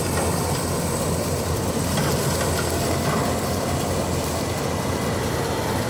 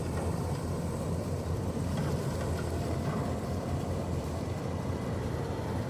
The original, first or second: first